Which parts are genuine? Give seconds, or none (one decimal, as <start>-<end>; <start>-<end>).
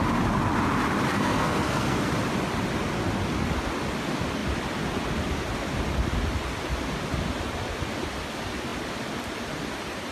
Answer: 0.0-1.1; 2.1-10.1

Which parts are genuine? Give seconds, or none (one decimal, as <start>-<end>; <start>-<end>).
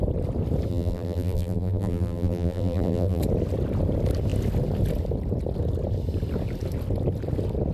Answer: 0.0-0.7; 3.2-7.7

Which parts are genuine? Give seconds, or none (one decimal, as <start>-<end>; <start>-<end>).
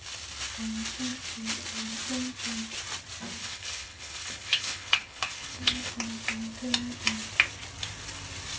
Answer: 0.0-3.4; 5.9-8.6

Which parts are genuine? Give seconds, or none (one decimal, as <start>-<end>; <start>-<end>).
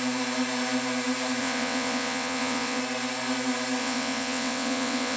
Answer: 0.0-1.4; 2.8-3.8